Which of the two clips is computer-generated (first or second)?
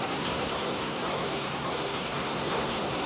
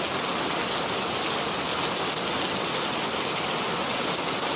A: first